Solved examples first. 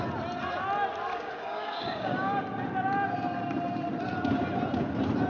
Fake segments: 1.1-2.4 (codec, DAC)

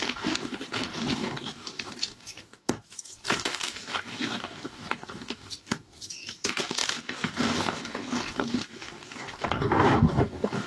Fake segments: 0.0-10.7 (codec, DAC)

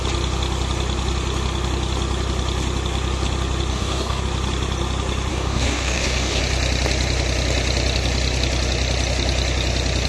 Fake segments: 3.7-4.2 (codec, DAC); 5.3-6.4

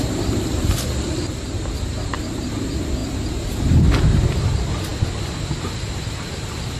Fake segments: none

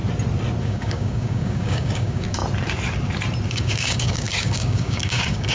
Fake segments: 0.6-2.4 (codec, DAC); 3.5-5.5